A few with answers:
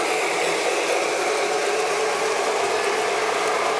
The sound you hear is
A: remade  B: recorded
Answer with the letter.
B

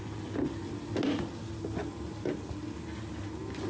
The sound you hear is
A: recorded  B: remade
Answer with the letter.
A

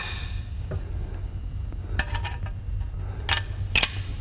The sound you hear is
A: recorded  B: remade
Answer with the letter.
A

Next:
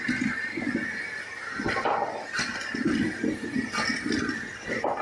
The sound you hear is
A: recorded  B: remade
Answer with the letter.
A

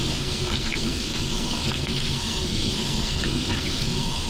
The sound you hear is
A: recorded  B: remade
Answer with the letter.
B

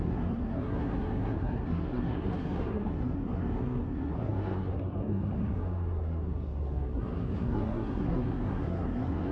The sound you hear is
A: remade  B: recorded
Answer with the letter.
A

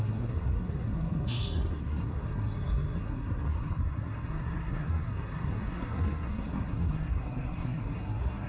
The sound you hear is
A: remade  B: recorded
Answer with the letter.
A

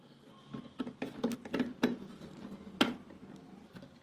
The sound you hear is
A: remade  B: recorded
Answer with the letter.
B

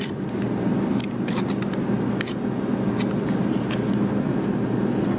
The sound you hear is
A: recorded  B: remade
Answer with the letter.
A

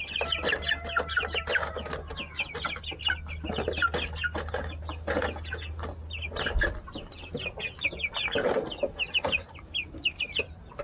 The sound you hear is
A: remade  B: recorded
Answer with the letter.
B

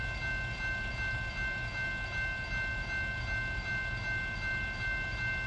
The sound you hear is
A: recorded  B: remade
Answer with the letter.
A